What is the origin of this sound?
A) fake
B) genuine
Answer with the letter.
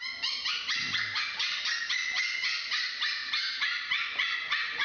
B